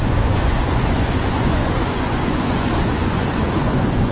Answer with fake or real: fake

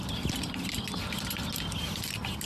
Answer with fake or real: real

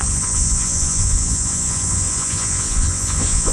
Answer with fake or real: fake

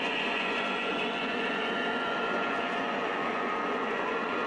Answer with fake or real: fake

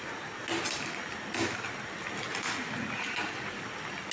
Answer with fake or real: real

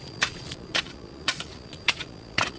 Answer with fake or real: fake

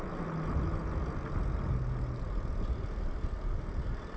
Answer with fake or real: real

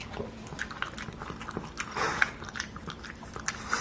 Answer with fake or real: real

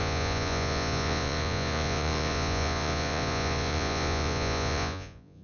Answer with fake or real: fake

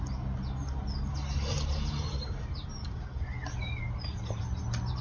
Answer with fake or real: real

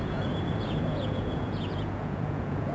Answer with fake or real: fake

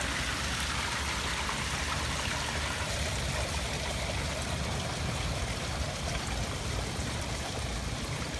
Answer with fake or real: real